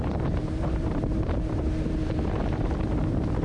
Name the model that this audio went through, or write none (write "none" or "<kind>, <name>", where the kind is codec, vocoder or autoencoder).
vocoder, BigVGAN v2